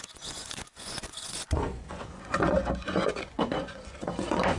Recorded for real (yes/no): no